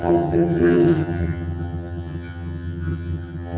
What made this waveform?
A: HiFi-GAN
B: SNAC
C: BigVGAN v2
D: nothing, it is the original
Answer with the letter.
A